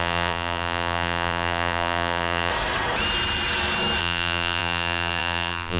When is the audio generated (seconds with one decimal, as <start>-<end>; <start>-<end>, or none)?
0.0-2.5; 4.0-5.8